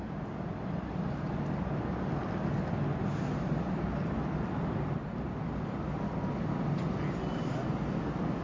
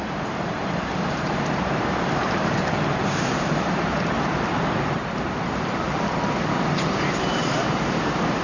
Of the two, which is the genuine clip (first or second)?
first